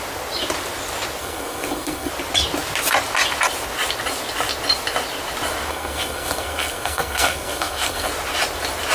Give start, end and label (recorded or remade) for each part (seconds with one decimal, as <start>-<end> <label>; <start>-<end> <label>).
0.0-1.2 recorded; 1.2-2.1 remade; 2.1-5.7 recorded; 5.7-8.1 remade; 8.1-8.9 recorded